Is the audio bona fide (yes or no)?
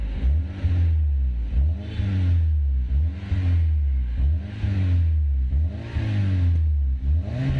yes